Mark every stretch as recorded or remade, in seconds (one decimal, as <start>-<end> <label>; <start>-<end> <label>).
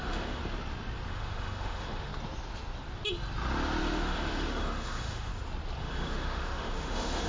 0.0-0.4 remade; 0.4-1.1 recorded; 1.1-2.1 remade; 2.1-3.8 recorded; 3.8-5.3 remade; 5.3-5.8 recorded; 5.8-7.3 remade